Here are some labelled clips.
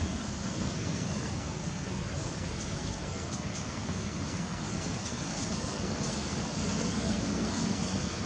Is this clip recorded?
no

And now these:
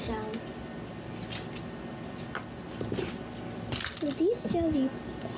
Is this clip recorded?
yes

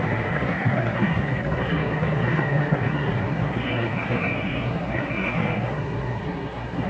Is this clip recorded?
no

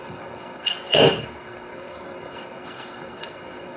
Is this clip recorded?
no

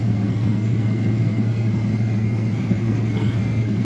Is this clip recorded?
no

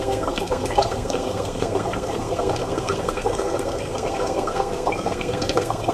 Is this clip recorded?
no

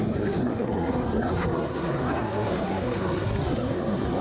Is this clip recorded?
no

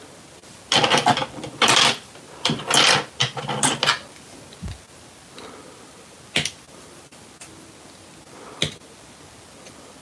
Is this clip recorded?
yes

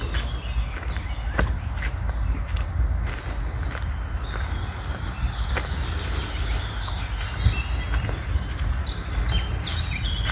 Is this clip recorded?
yes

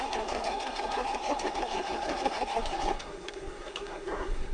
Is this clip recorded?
no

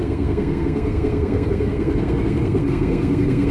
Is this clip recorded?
no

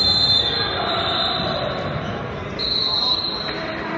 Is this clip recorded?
yes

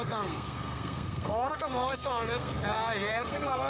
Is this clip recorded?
no